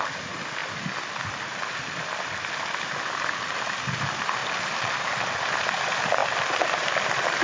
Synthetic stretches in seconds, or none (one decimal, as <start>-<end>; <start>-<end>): none